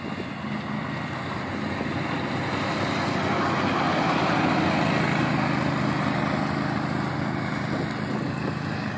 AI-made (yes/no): no